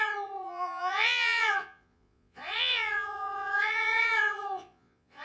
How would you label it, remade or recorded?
remade